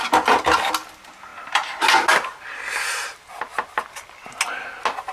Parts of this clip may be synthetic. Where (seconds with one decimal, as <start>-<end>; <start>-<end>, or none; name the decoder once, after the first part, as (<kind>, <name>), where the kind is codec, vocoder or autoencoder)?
none